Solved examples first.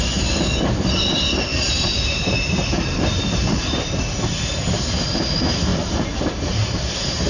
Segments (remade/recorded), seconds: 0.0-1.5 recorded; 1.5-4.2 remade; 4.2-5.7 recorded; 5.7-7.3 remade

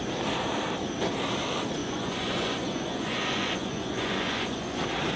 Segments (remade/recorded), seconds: 0.0-1.8 recorded; 1.8-4.8 remade; 4.8-5.2 recorded

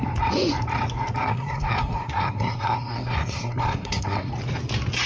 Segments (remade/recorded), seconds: 0.0-1.2 recorded; 1.2-4.3 remade; 4.3-5.1 recorded